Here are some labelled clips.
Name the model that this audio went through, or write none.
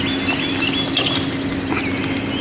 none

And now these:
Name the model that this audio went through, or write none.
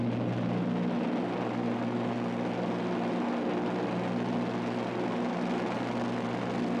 none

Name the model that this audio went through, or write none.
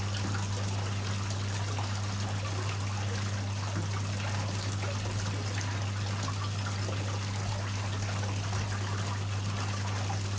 none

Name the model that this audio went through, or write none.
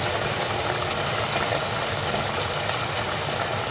none